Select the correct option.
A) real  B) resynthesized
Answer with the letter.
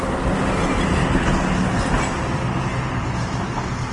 A